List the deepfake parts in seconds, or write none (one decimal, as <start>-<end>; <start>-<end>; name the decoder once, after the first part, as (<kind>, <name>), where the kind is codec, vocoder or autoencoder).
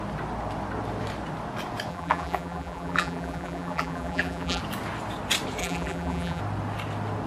1.9-4.6 (vocoder, BigVGAN v2); 5.6-6.4